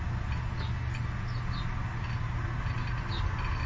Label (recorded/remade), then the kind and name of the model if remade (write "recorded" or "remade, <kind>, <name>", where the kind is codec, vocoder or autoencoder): recorded